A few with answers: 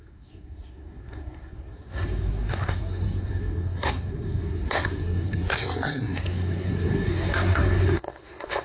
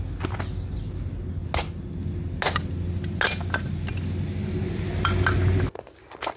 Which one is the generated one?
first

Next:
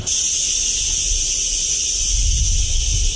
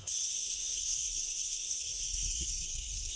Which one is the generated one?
second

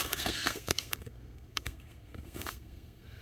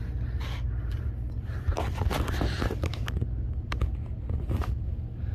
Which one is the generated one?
first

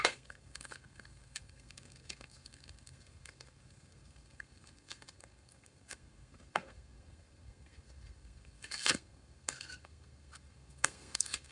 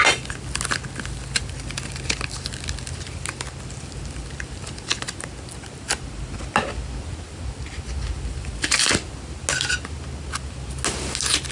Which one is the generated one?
first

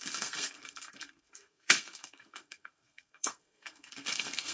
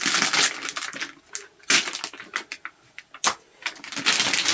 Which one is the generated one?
first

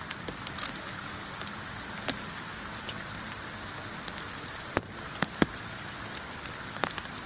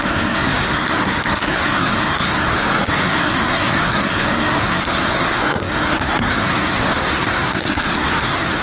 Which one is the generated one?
second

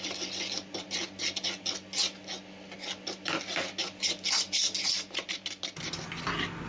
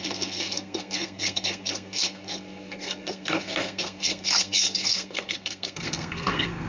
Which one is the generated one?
second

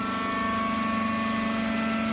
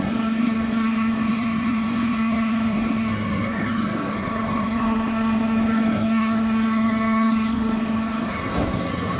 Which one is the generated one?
second